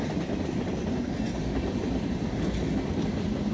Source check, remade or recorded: recorded